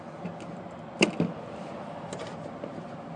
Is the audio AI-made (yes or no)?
no